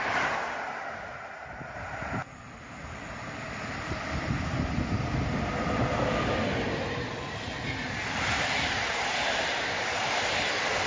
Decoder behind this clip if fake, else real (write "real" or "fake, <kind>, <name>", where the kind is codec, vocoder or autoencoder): real